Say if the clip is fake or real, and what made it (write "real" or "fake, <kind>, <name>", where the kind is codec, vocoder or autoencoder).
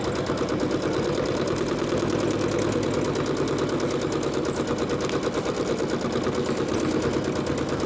real